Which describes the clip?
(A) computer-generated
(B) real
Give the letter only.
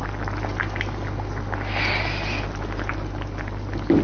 B